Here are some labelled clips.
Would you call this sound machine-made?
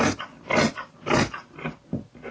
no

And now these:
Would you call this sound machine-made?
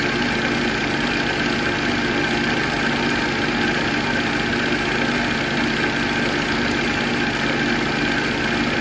no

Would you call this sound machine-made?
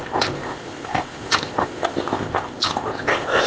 yes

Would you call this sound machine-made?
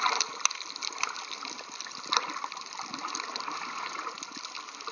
no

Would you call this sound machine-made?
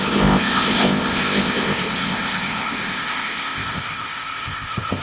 yes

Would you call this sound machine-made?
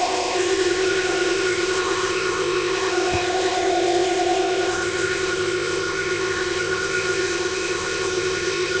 yes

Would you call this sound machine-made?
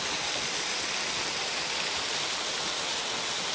no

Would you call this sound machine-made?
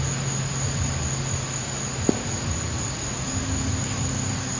no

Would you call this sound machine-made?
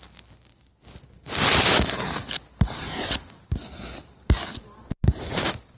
no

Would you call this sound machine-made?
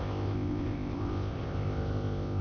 yes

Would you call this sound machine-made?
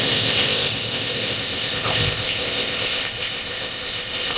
yes